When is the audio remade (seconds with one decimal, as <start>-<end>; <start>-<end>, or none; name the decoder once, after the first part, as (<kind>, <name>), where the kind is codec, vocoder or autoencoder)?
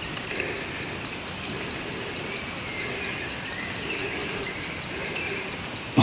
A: none